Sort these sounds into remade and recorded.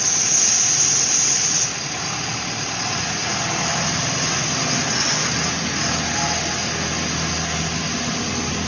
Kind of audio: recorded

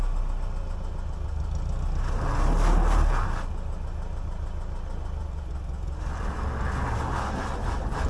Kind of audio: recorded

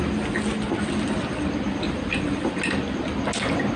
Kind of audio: recorded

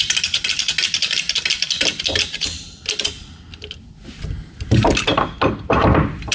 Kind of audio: recorded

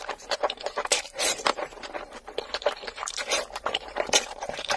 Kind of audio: remade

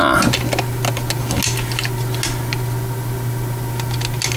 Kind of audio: recorded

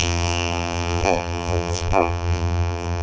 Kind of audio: remade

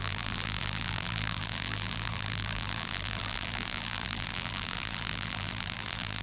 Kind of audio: remade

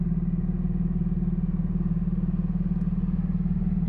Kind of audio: recorded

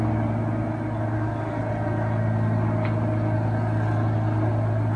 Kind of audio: recorded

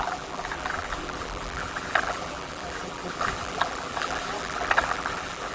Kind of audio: remade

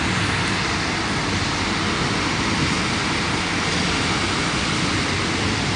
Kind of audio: recorded